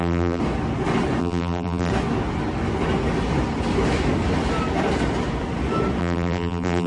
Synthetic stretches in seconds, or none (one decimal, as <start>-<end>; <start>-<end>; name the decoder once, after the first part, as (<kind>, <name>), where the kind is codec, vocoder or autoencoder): 0.0-0.4 (vocoder, BigVGAN v2); 1.2-1.9; 6.0-6.9